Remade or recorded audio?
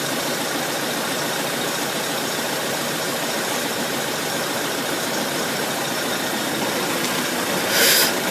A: remade